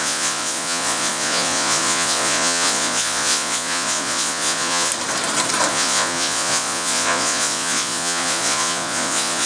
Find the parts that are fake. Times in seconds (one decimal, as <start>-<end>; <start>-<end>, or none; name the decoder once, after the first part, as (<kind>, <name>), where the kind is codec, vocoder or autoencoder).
0.0-4.9 (vocoder, Vocos); 5.7-9.5